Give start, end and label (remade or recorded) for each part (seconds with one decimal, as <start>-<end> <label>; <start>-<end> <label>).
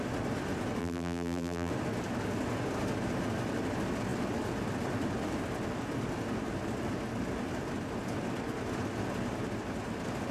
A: 0.0-0.8 recorded; 0.8-1.7 remade; 1.7-10.3 recorded